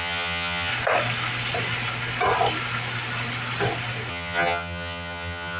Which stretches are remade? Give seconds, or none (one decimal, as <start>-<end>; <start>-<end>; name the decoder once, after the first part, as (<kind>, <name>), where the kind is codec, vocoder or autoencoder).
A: 0.0-0.7 (vocoder, HiFi-GAN); 4.1-5.6